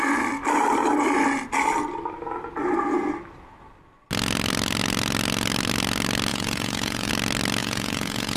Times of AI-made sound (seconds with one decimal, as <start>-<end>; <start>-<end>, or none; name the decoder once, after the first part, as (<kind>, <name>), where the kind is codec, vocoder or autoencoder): 6.3-7.1 (vocoder, Vocos); 7.6-8.4